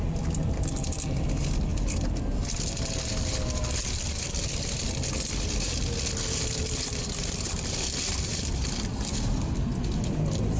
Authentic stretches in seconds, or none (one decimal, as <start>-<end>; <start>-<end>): 0.0-10.6